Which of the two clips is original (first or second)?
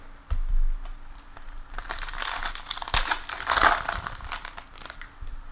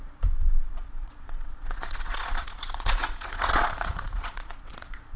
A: first